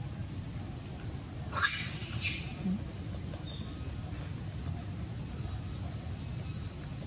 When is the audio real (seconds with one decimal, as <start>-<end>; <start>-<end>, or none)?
0.0-7.1